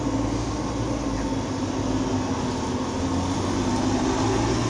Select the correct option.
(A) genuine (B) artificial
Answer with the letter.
A